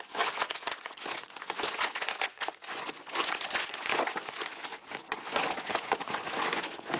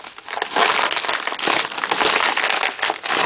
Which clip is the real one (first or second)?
second